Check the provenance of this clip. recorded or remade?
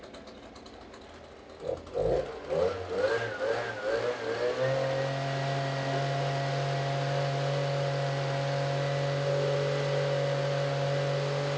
recorded